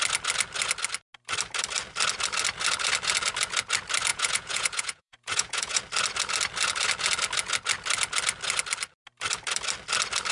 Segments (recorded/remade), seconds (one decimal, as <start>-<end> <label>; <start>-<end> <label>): 0.0-4.1 recorded; 4.1-5.8 remade; 5.8-10.3 recorded